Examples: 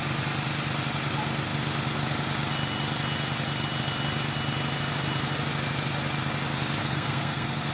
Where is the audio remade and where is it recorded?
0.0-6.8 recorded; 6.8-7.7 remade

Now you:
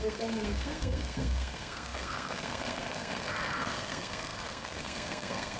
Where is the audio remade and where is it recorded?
0.0-5.6 remade

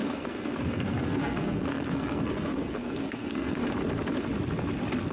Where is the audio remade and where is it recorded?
0.0-3.6 remade; 3.6-5.1 recorded

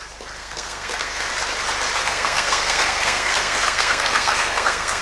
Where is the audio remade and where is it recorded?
0.0-0.4 recorded; 0.4-1.3 remade; 1.3-2.0 recorded; 2.0-5.0 remade

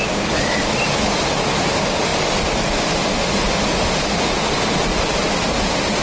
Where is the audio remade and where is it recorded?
0.0-6.0 recorded

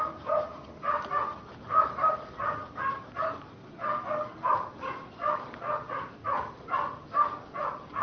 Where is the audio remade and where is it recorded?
0.0-8.0 recorded

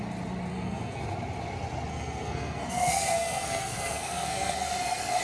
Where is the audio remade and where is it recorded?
0.0-0.5 recorded; 0.5-1.0 remade; 1.0-1.9 recorded; 1.9-5.2 remade